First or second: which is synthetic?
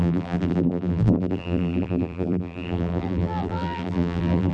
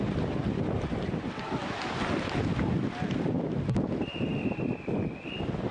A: first